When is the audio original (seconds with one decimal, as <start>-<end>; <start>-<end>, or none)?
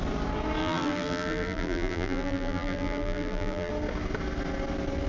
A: 0.0-0.6; 3.7-5.1